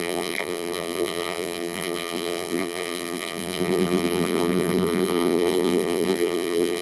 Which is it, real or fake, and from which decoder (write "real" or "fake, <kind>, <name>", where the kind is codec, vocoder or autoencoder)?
fake, vocoder, BigVGAN v2